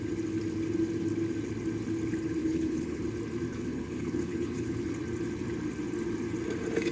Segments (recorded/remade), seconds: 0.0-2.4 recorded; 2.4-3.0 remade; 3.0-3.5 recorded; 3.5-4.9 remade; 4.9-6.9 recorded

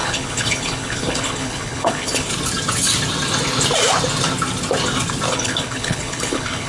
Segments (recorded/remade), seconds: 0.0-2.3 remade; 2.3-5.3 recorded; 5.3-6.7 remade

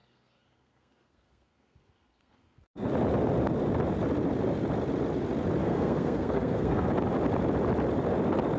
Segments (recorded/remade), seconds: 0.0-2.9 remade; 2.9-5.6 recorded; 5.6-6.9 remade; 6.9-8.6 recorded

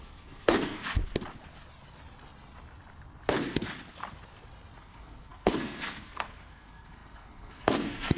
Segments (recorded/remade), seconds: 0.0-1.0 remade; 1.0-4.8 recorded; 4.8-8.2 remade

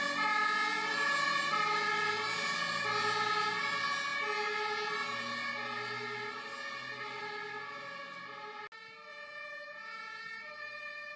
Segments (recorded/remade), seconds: 0.0-9.1 recorded; 9.1-10.2 remade; 10.2-11.2 recorded

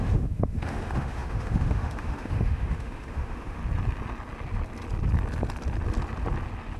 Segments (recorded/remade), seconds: 0.0-3.6 remade; 3.6-6.8 recorded

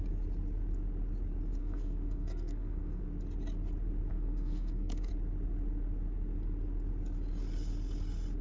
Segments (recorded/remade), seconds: 0.0-1.6 recorded; 1.6-3.0 remade; 3.0-4.1 recorded; 4.1-5.1 remade; 5.1-8.4 recorded

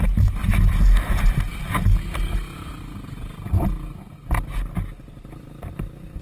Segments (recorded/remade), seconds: 0.0-0.4 remade; 0.4-1.1 recorded; 1.1-1.5 remade; 1.5-5.2 recorded; 5.2-6.2 remade